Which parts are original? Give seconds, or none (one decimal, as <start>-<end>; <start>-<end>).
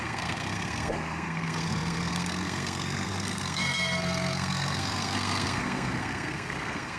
none